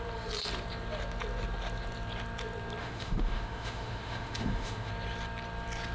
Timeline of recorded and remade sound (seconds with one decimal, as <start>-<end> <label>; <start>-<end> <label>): 0.0-2.8 recorded; 2.8-4.9 remade; 4.9-5.9 recorded